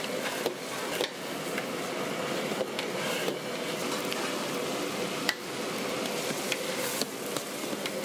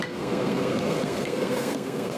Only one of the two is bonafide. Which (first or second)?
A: first